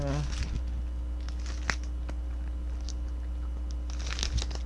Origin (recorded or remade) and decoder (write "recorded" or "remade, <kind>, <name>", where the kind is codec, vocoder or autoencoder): recorded